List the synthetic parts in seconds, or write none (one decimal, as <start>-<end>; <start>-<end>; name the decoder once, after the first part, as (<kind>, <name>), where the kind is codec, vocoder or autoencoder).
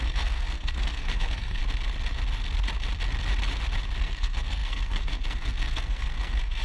0.0-1.6 (codec, SNAC); 4.0-6.6